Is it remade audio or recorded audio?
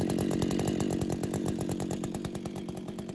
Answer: recorded